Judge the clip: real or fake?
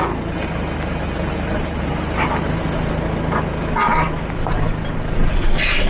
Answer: real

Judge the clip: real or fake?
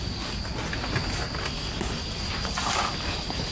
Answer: real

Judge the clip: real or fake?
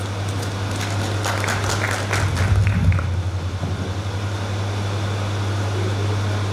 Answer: real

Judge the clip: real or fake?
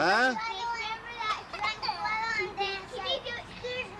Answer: real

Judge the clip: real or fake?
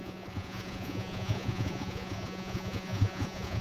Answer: fake